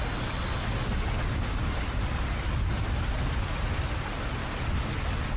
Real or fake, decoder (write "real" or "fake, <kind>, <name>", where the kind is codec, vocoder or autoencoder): real